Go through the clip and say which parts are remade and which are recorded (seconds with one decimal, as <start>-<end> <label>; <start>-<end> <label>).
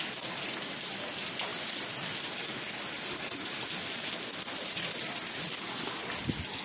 0.0-6.6 recorded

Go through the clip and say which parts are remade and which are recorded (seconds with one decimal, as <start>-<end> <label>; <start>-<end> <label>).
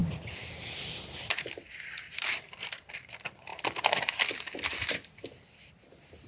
0.0-0.7 recorded; 0.7-3.5 remade; 3.5-6.3 recorded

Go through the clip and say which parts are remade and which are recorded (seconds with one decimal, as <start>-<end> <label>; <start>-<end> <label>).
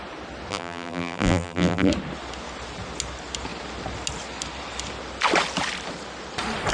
0.0-0.5 recorded; 0.5-1.9 remade; 1.9-6.7 recorded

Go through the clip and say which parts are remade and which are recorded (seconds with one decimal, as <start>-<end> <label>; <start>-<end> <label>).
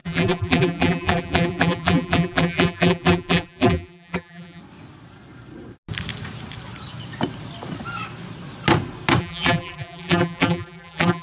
0.0-4.6 remade; 4.6-9.2 recorded; 9.2-11.2 remade